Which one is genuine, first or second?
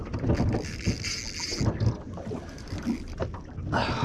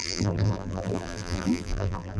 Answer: first